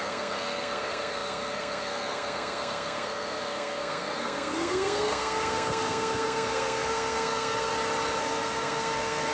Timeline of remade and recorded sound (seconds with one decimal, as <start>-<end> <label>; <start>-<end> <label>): 0.0-7.7 remade; 7.7-8.2 recorded; 8.2-9.3 remade